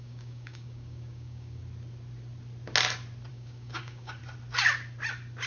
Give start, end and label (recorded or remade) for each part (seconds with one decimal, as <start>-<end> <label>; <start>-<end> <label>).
0.0-1.6 remade; 1.6-3.3 recorded; 3.3-4.2 remade; 4.2-5.5 recorded

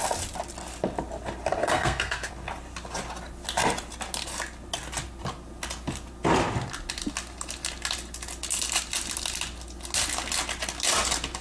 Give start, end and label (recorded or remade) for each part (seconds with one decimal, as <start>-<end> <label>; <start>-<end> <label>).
0.0-1.6 recorded; 1.6-2.3 remade; 2.3-11.4 recorded

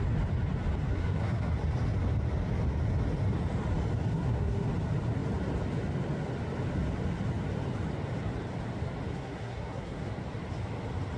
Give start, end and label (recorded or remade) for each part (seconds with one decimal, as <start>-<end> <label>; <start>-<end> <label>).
0.0-0.9 recorded; 0.9-1.5 remade; 1.5-4.1 recorded; 4.1-4.7 remade; 4.7-9.1 recorded; 9.1-10.1 remade; 10.1-11.2 recorded

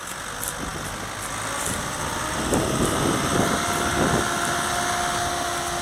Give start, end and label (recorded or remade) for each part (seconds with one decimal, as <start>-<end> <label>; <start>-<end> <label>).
0.0-5.8 recorded

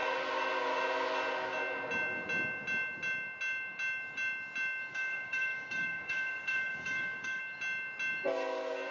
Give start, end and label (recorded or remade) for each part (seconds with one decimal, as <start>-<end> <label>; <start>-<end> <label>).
0.0-4.9 recorded; 4.9-7.4 remade; 7.4-8.9 recorded

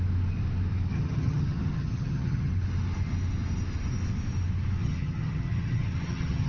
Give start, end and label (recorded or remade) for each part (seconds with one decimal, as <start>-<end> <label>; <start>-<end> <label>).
0.0-0.9 recorded; 0.9-2.5 remade; 2.5-4.8 recorded; 4.8-6.5 remade